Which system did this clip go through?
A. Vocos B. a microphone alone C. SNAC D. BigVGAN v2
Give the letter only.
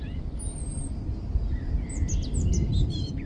B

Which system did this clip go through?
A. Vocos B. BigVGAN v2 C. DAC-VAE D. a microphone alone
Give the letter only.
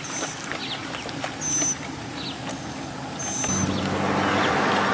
D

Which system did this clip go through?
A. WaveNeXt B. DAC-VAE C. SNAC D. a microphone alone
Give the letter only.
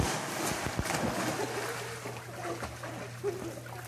D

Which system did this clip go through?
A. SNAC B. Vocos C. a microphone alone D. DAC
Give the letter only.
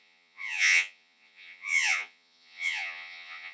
B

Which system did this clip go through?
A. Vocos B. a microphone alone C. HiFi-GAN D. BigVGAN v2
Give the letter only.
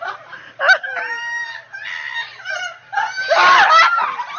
B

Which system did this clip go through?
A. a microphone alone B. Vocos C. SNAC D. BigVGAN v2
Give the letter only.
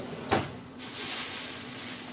B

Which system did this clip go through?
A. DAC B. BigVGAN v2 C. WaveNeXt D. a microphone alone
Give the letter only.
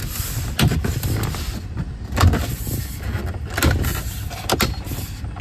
B